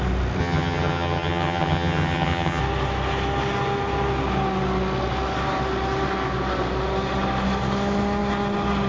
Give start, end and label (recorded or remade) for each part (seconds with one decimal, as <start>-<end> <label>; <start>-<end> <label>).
0.0-0.4 recorded; 0.4-2.6 remade; 2.6-8.9 recorded